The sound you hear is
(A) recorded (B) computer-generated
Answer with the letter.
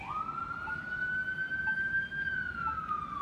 A